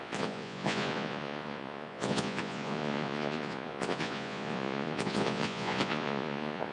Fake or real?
fake